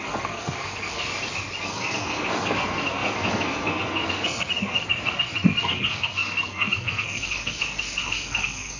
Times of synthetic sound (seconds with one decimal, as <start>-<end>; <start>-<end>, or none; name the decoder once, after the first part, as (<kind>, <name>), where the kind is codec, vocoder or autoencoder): 0.0-1.1 (codec, SNAC); 1.6-8.8